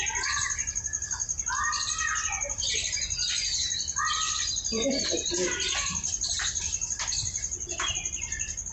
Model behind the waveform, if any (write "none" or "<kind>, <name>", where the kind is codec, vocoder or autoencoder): none